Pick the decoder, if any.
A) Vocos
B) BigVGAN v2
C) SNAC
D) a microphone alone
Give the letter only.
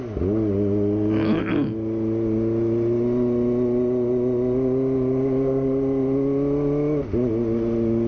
D